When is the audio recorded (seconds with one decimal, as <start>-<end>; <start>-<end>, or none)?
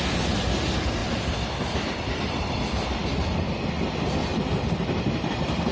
0.0-1.0; 2.6-4.3; 5.3-5.7